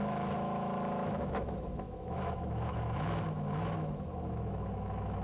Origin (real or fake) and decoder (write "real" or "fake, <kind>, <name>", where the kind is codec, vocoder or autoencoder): fake, autoencoder, DAC-VAE